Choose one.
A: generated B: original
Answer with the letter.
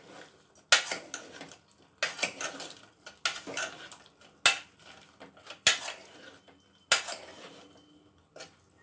B